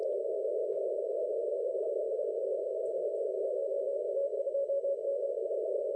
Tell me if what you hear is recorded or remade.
recorded